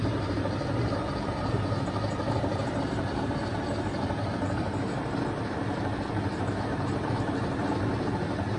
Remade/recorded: remade